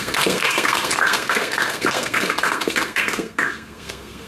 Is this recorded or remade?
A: remade